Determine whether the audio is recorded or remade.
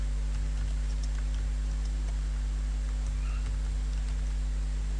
recorded